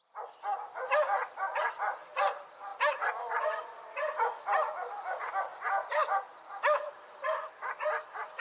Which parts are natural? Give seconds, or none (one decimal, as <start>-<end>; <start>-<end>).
0.0-8.4